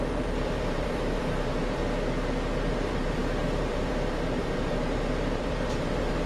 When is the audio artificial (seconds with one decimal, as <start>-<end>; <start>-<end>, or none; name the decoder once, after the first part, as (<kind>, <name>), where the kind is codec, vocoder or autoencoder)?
0.0-1.8 (vocoder, BigVGAN v2); 2.5-6.3